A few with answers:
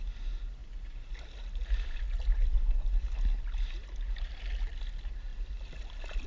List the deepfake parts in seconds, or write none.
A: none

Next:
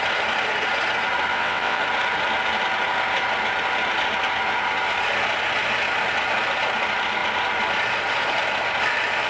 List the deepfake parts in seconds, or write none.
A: 1.3-1.8

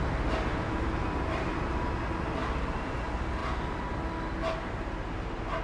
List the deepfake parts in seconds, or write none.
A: none

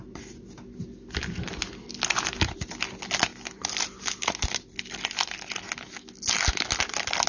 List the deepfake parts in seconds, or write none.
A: none

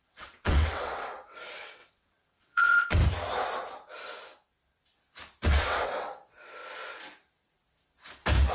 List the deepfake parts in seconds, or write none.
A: 0.0-3.0; 5.5-6.6